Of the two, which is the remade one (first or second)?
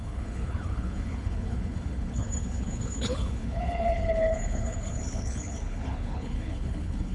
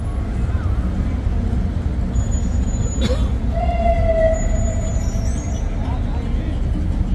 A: first